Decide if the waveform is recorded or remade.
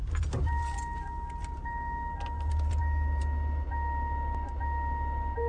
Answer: recorded